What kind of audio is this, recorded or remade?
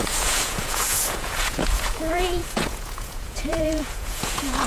remade